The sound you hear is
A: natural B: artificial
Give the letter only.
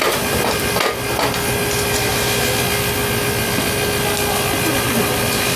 A